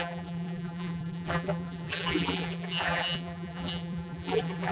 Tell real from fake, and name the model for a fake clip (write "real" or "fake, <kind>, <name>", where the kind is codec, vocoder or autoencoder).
fake, vocoder, BigVGAN v2